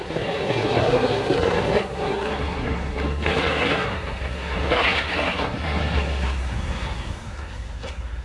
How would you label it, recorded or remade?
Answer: remade